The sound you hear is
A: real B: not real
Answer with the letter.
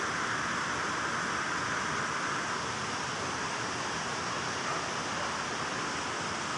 A